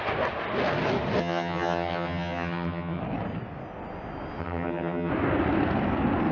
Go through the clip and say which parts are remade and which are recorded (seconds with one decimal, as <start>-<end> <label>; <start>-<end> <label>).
0.0-1.2 recorded; 1.2-3.0 remade; 3.0-4.4 recorded; 4.4-5.1 remade; 5.1-6.3 recorded